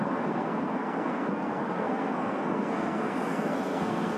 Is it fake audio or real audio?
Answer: fake